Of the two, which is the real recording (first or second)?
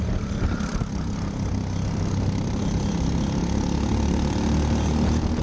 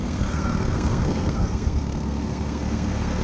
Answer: first